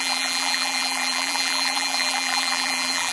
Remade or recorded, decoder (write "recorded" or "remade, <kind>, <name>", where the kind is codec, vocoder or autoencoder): remade, vocoder, BigVGAN v2